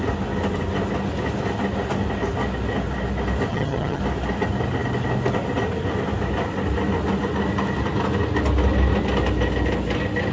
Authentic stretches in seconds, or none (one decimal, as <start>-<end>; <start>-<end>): 0.0-3.5; 4.0-10.3